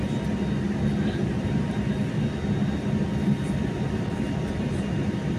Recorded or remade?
recorded